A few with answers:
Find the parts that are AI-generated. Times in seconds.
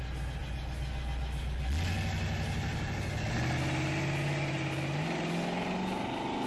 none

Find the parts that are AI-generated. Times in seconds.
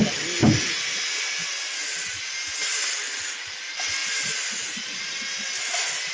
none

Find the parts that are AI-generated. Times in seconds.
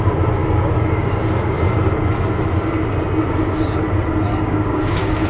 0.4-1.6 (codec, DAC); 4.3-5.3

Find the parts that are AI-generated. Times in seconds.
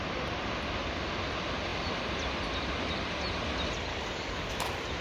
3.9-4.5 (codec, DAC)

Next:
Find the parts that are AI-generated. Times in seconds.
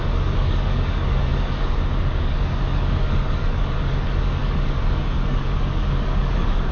0.0-6.7 (codec, DAC)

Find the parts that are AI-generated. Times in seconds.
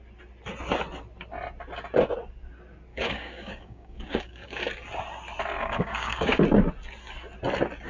2.9-4.6 (codec, DAC); 5.6-6.4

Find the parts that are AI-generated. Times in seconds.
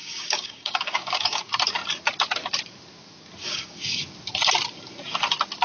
0.0-1.4 (codec, DAC); 3.4-4.0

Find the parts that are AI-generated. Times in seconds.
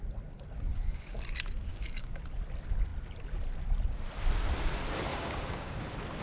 0.7-1.2 (codec, DAC); 1.7-2.2; 5.1-5.8